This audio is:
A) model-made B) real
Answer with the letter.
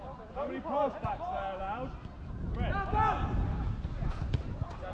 B